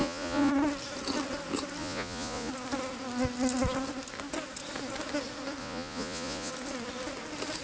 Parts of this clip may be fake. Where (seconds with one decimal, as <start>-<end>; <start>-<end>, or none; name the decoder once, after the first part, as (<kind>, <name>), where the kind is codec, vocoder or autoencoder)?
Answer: 0.0-0.5 (vocoder, Vocos); 1.8-2.5; 5.6-6.5

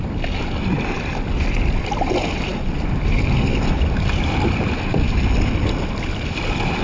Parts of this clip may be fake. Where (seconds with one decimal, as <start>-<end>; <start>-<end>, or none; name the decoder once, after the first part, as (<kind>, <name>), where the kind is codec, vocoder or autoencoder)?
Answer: none

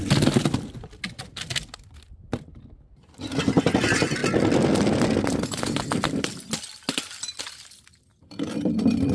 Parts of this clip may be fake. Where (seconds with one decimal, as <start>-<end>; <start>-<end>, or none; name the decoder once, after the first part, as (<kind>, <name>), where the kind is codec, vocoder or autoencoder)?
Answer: none

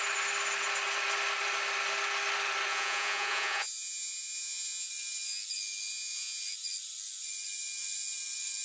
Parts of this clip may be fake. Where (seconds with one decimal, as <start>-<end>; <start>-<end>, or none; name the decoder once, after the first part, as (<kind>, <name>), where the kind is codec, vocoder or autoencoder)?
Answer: 2.7-4.9 (vocoder, Vocos); 5.9-6.4

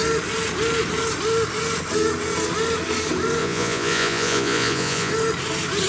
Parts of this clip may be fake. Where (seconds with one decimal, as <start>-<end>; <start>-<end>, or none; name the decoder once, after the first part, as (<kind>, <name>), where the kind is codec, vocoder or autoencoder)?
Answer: 3.4-5.1 (vocoder, Vocos)